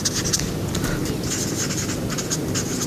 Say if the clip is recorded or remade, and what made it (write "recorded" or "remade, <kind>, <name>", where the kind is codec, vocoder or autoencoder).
recorded